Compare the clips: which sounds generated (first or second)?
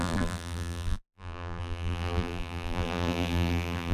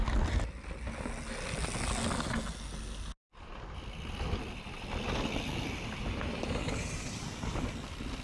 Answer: first